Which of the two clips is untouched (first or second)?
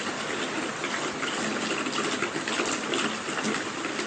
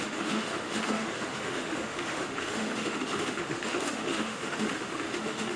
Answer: first